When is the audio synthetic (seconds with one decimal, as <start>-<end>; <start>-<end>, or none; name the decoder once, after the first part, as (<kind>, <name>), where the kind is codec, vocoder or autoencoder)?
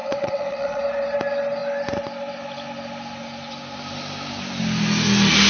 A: 0.0-0.8 (vocoder, WaveNeXt)